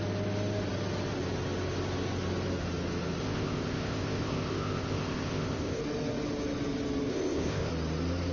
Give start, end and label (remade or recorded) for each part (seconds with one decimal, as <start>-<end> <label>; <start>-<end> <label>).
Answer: 0.0-3.2 recorded; 3.2-5.8 remade; 5.8-7.1 recorded; 7.1-7.7 remade; 7.7-8.3 recorded